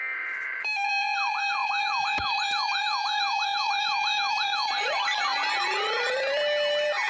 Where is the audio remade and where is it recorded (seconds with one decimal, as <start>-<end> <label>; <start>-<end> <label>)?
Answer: 0.0-7.1 remade